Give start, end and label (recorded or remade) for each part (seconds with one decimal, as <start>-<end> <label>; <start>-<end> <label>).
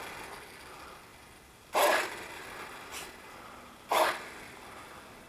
0.0-5.3 recorded